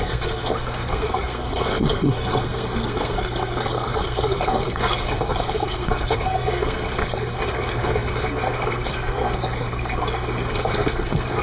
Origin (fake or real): fake